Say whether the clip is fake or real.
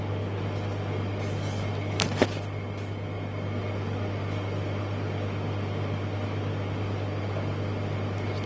real